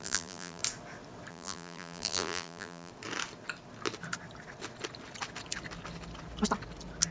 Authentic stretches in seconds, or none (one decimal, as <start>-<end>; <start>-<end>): 0.6-1.3; 2.9-7.1